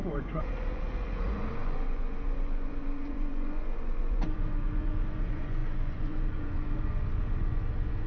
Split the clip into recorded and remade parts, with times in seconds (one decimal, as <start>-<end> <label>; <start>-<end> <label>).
0.0-8.1 remade